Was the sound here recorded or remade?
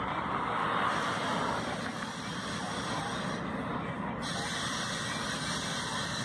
recorded